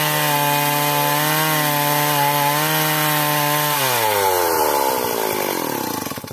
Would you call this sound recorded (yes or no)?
yes